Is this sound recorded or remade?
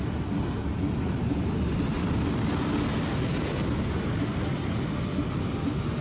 recorded